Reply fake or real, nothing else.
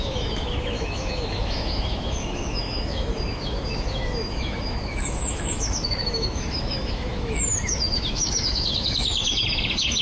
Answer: fake